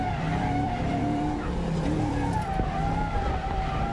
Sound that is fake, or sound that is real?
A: fake